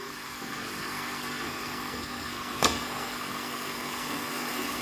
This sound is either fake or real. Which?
fake